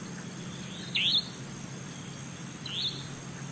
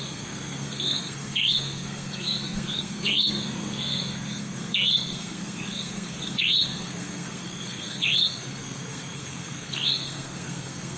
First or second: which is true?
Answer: first